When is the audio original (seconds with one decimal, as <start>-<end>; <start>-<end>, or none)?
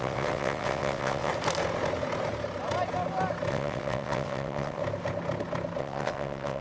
1.3-3.5; 4.8-5.8